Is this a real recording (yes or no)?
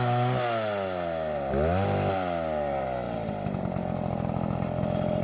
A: yes